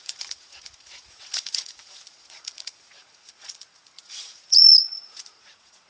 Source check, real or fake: fake